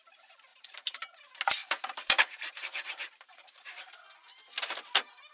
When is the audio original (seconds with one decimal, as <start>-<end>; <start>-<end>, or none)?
0.0-0.5; 1.2-1.6; 3.0-5.3